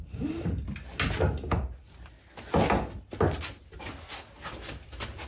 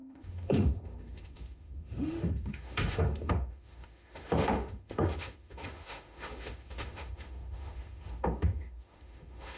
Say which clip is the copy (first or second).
second